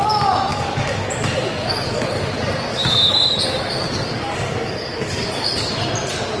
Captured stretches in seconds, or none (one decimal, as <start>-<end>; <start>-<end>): 0.0-0.5; 2.2-2.7; 5.7-6.4